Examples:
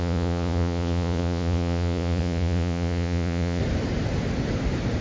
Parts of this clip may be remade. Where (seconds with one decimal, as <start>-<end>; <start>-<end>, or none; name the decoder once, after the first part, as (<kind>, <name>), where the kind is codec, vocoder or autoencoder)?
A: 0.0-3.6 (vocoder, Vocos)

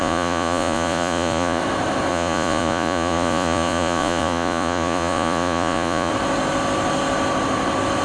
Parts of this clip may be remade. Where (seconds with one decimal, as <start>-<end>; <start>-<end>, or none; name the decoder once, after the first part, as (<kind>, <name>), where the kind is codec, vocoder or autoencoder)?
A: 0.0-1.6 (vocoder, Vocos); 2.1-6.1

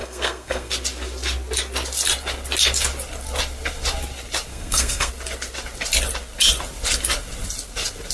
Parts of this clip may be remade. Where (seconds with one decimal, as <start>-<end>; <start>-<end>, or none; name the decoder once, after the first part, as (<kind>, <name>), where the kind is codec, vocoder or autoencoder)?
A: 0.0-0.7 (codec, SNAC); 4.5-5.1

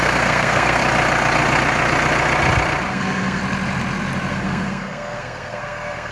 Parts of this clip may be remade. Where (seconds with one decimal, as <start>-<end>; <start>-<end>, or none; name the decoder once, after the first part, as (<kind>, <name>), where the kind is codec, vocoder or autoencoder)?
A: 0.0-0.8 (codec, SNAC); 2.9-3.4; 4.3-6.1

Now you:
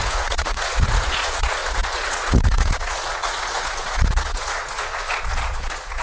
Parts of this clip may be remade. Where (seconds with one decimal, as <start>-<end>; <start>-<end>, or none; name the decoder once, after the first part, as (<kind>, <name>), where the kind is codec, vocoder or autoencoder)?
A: 0.0-6.0 (vocoder, Vocos)

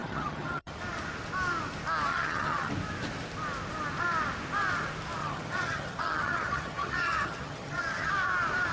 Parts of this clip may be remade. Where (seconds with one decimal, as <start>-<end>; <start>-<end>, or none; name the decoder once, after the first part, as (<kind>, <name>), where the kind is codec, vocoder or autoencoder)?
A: 0.0-0.8 (vocoder, HiFi-GAN); 2.1-2.7; 5.2-8.1

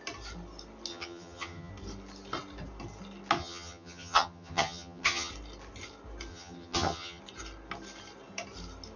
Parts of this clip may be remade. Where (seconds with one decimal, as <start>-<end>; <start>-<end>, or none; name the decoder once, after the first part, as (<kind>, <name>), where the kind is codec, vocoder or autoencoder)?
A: 0.9-1.7 (vocoder, HiFi-GAN); 3.4-5.3; 6.3-7.2